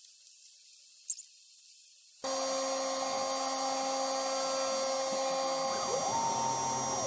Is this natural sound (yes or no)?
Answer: yes